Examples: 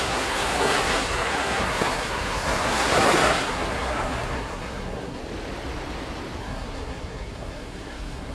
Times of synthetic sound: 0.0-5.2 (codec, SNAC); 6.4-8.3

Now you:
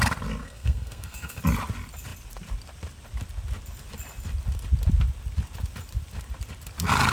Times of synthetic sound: 0.4-1.4 (codec, SNAC)

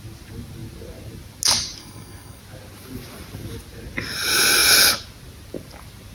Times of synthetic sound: 1.8-2.4 (codec, SNAC)